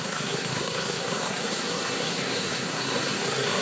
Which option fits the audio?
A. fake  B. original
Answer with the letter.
A